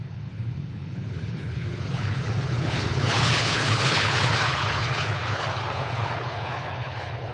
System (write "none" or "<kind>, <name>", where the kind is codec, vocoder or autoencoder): codec, HILCodec